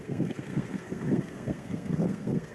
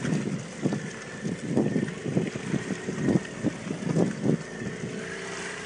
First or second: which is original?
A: second